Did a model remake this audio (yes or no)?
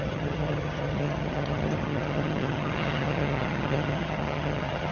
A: yes